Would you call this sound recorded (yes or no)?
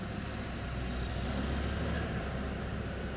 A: yes